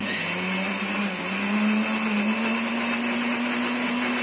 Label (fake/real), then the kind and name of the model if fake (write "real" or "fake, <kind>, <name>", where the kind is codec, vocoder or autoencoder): real